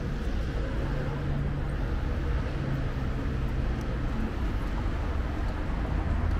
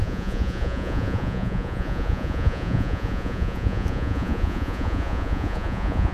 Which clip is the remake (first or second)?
second